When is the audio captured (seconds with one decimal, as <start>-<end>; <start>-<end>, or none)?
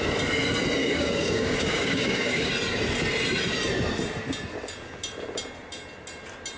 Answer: 0.0-0.8; 2.5-6.6